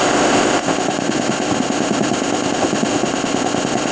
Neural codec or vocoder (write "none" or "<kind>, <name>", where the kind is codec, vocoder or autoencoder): codec, ZipCodec